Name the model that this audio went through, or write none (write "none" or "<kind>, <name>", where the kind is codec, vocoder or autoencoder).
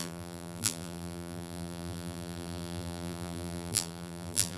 vocoder, BigVGAN v2